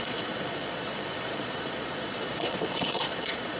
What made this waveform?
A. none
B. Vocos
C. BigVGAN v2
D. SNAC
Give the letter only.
B